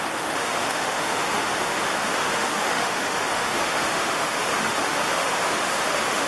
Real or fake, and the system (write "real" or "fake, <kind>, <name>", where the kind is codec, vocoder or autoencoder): fake, autoencoder, DAC-VAE